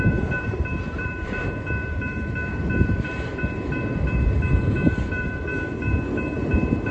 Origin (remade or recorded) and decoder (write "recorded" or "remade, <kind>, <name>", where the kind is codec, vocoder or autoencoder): remade, vocoder, BigVGAN v2